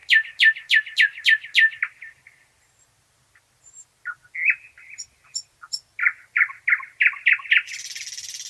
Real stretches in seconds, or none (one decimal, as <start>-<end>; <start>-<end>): 0.0-6.0; 6.6-8.5